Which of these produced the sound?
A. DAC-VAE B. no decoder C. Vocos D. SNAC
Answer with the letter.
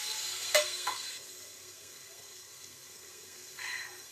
D